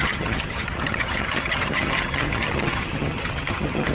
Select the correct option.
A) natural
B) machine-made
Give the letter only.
B